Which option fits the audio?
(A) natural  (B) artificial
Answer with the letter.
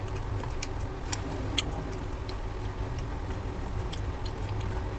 A